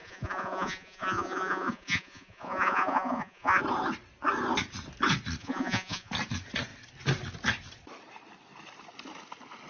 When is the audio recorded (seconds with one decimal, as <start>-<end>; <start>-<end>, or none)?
3.6-5.4; 6.1-9.7